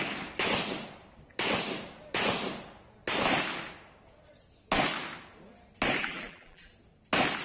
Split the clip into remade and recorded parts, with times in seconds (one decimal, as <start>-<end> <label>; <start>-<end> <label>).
0.0-6.0 recorded; 6.0-6.7 remade; 6.7-7.4 recorded